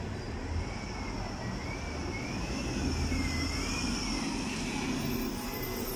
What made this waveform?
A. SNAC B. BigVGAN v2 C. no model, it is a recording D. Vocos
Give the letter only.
C